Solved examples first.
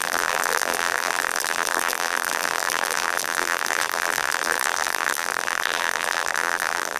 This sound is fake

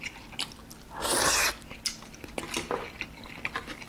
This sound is real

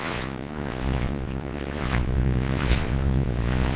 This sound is fake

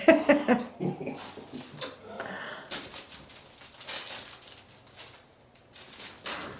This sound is real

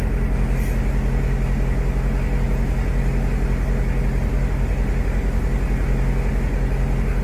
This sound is real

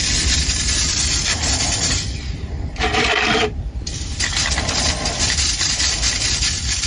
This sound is fake